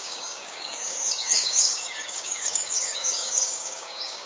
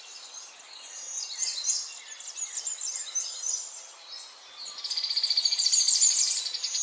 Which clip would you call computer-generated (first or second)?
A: first